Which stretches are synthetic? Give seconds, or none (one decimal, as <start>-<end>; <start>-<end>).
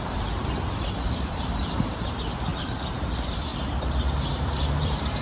0.0-5.2